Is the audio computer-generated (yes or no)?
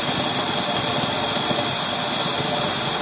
no